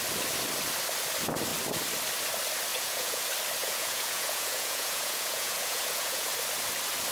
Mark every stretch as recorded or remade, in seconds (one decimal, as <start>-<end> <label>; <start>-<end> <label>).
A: 0.0-2.7 recorded; 2.7-3.2 remade; 3.2-3.6 recorded; 3.6-6.3 remade; 6.3-7.1 recorded